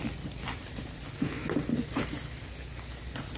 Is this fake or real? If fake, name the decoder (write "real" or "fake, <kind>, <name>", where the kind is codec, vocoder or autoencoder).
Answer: real